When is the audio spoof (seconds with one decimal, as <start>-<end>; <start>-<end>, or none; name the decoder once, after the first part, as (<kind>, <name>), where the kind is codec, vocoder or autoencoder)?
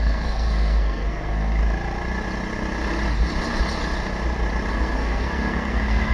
0.0-1.6 (codec, SNAC); 4.7-6.1